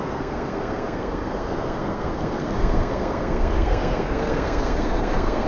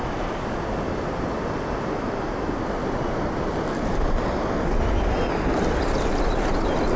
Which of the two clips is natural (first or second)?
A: second